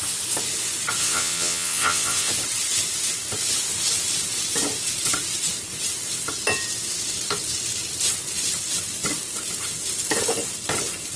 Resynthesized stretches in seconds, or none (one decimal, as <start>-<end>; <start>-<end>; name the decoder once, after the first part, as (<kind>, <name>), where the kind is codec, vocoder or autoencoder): 1.0-2.3 (vocoder, WaveNeXt)